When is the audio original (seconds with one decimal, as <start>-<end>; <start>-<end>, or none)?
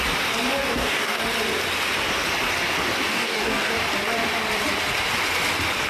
0.0-0.7; 1.2-3.1; 3.7-5.9